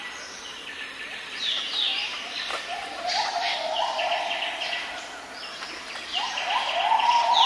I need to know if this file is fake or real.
real